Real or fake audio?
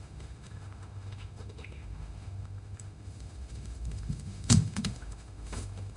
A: fake